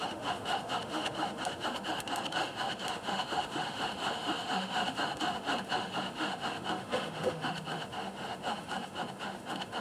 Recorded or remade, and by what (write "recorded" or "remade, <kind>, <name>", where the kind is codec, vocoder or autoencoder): remade, autoencoder, DAC-VAE